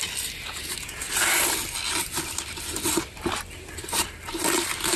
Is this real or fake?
real